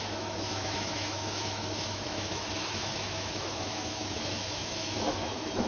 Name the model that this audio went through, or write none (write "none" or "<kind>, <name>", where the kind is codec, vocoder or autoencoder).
autoencoder, DAC-VAE